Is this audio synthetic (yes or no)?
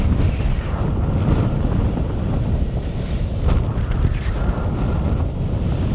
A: no